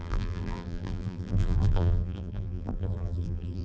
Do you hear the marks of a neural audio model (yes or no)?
yes